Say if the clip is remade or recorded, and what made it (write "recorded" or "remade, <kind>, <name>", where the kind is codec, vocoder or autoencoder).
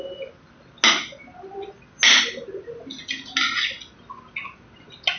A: recorded